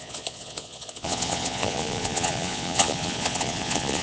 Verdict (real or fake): fake